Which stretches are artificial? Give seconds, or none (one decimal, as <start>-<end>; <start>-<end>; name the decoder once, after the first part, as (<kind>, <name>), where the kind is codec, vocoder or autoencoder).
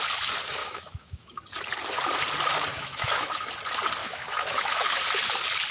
0.6-1.4 (autoencoder, DAC-VAE); 2.7-3.5; 4.0-5.0